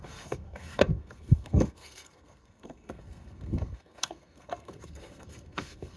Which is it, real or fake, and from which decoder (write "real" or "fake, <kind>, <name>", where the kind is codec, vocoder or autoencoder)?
fake, codec, SNAC